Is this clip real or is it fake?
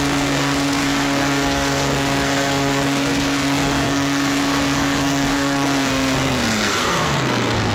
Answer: fake